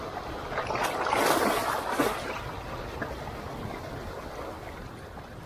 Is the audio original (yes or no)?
yes